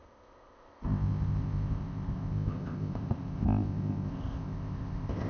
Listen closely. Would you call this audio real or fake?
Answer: fake